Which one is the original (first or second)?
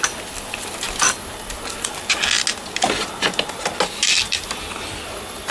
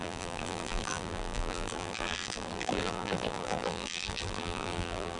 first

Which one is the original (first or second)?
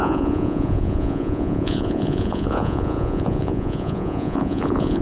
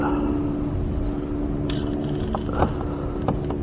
second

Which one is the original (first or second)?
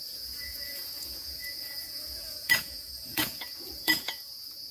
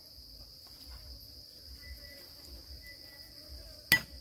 second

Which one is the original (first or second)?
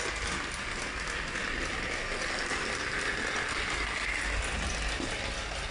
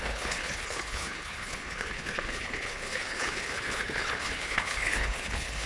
first